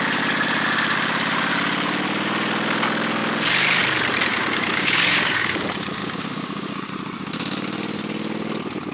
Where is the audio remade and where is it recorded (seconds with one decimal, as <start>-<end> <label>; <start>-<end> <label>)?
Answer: 0.0-4.3 recorded; 4.3-5.6 remade; 5.6-6.0 recorded; 6.0-6.9 remade; 6.9-8.9 recorded